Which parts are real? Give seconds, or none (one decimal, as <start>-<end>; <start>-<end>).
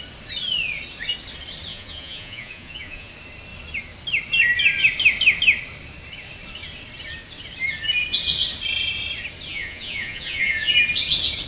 0.0-1.7; 3.1-9.5; 10.7-11.5